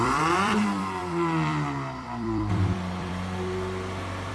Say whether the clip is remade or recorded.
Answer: remade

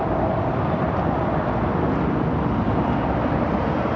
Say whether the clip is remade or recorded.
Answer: recorded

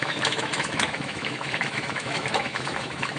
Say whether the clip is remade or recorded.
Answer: remade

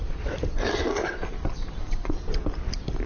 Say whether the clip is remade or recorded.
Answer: recorded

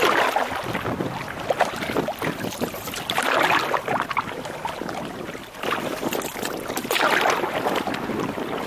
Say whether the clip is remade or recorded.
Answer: recorded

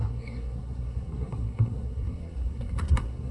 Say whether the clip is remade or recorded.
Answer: remade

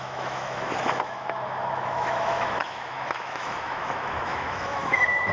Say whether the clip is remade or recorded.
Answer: remade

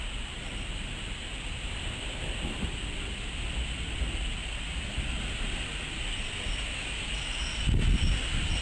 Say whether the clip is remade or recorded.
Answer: recorded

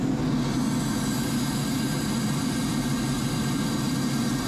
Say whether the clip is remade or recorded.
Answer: recorded